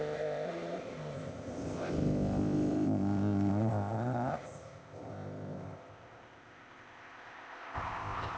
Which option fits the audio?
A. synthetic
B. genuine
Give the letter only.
A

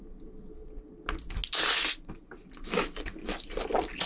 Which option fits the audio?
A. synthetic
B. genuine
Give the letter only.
B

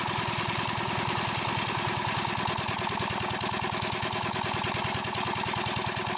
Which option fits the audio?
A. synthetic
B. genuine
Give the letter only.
B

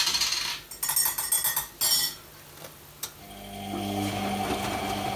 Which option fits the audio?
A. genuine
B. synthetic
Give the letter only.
A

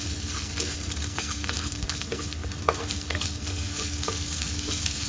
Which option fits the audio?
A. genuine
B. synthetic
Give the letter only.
B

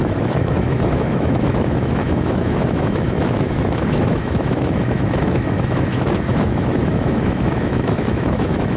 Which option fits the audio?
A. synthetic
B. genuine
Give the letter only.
A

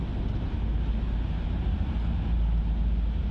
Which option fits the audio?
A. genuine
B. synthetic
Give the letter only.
A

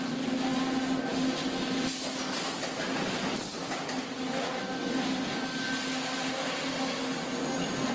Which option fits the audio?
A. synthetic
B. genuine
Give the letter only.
B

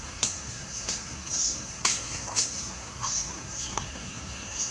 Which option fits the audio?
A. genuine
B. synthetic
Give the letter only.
B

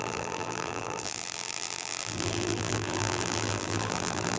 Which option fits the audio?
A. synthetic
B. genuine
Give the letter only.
A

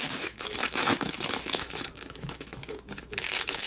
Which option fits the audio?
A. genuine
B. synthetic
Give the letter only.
B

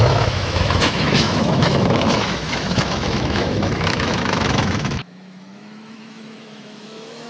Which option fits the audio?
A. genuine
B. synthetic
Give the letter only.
B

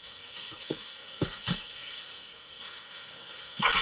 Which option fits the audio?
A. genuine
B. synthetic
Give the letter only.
B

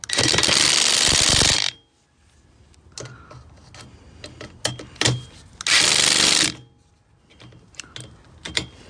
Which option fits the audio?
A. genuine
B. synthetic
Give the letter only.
A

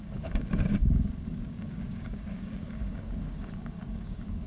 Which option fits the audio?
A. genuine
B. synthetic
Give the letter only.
B